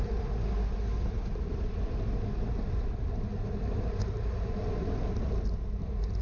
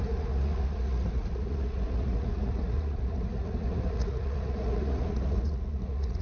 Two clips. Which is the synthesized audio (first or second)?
second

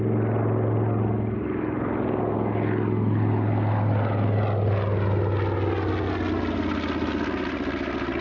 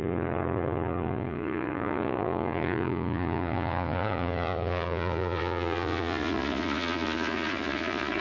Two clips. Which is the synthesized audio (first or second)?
second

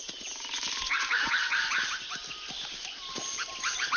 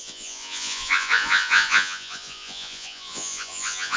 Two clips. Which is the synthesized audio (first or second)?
second